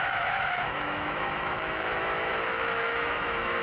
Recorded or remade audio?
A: remade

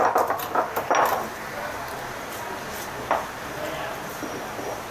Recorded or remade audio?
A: recorded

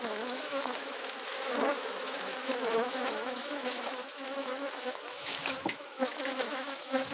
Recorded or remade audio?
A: remade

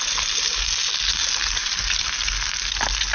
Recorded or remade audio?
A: recorded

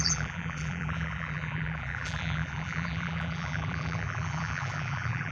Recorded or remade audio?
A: remade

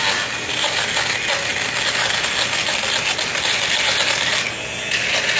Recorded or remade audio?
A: recorded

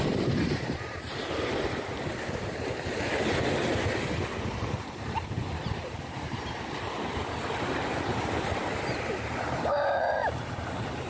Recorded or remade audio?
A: remade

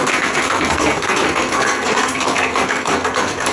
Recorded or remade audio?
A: remade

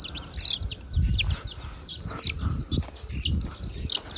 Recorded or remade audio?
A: recorded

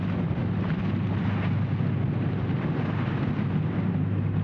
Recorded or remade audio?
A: recorded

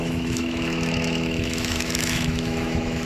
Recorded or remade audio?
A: remade